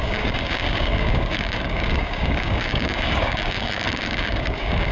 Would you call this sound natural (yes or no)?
no